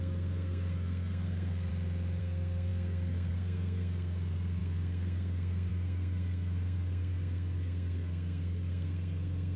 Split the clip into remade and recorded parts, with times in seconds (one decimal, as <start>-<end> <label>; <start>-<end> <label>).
0.0-1.7 remade; 1.7-2.2 recorded; 2.2-9.6 remade